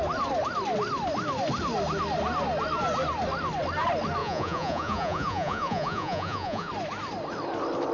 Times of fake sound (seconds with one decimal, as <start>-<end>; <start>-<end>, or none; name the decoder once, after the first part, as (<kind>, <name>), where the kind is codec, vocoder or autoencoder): 4.2-6.7 (vocoder, Vocos)